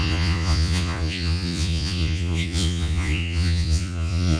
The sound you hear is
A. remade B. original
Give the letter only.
A